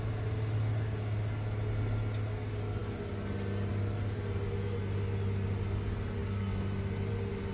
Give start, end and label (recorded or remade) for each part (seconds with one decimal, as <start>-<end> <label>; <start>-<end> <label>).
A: 0.0-7.5 recorded